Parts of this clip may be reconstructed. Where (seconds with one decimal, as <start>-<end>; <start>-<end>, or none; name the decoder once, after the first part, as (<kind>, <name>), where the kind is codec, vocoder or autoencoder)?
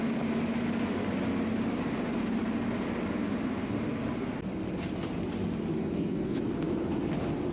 5.7-6.4 (codec, SNAC)